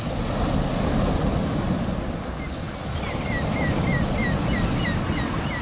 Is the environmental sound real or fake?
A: real